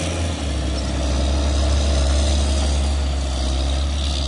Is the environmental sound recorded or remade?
recorded